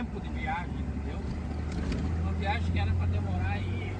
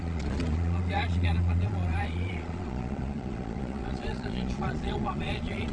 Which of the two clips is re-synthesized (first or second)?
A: second